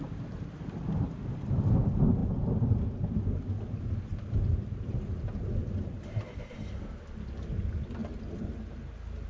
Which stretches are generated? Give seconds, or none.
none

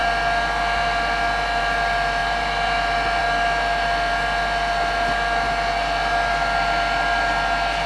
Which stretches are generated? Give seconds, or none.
none

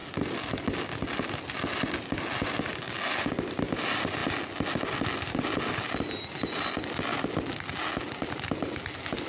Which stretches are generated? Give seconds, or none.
none

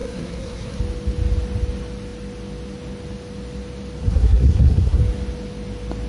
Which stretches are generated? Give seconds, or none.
0.0-0.8 (codec, SNAC); 4.0-5.0

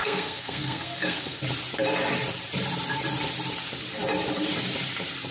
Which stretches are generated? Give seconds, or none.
0.0-1.4 (codec, SNAC)